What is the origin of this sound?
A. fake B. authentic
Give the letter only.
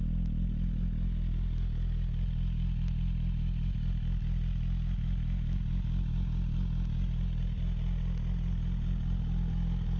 B